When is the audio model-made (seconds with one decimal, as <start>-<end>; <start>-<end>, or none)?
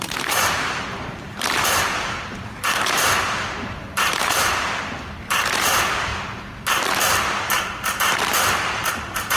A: 0.0-6.1; 8.9-9.4